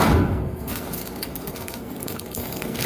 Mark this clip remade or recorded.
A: remade